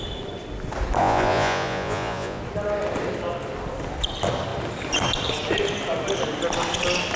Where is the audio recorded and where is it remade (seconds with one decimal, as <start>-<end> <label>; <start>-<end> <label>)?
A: 0.0-1.0 recorded; 1.0-2.4 remade; 2.4-7.2 recorded